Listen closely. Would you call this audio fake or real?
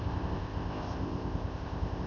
fake